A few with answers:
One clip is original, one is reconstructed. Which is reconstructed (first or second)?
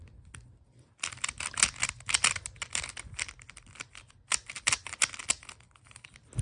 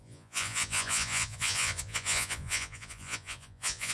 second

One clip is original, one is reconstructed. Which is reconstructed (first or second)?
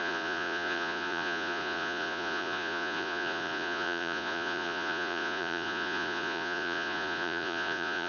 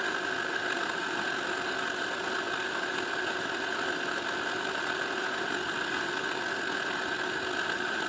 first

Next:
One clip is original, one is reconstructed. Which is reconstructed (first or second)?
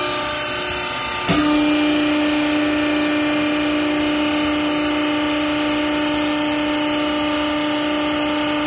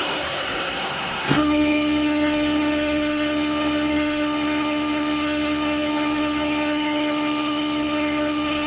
second